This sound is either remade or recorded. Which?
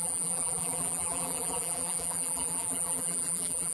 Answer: remade